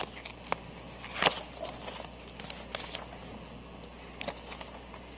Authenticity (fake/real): real